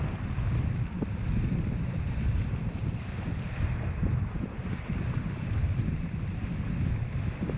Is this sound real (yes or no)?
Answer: yes